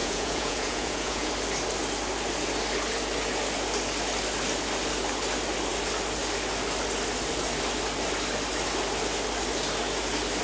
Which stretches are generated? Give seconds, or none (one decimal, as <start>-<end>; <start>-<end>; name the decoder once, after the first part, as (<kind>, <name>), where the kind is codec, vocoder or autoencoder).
0.0-1.3 (vocoder, Vocos)